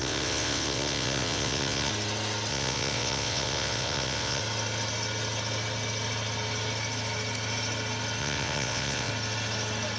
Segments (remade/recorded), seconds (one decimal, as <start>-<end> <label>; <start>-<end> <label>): 0.0-1.9 remade; 1.9-2.5 recorded; 2.5-4.4 remade; 4.4-8.2 recorded; 8.2-9.1 remade; 9.1-10.0 recorded

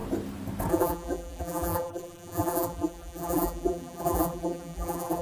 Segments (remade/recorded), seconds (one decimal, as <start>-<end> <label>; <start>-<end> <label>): 0.0-0.7 recorded; 0.7-5.2 remade